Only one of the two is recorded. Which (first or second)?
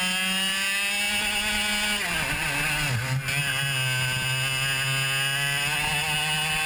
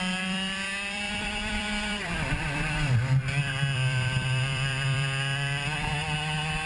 first